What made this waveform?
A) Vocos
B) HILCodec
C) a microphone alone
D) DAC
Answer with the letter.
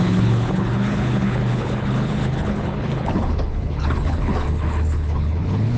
B